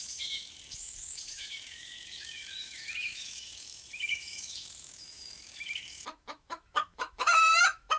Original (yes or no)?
no